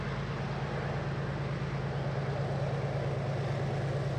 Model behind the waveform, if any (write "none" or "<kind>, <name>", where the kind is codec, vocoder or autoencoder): none